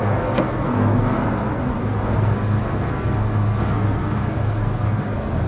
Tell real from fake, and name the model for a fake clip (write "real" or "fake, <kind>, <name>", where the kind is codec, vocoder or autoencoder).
fake, codec, SNAC